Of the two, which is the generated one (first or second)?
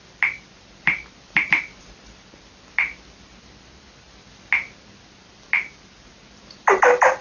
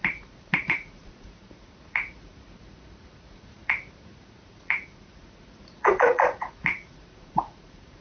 second